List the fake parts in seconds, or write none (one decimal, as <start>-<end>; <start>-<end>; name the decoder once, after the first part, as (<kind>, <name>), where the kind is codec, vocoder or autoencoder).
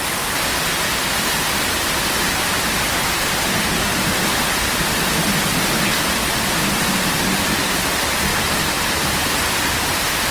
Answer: none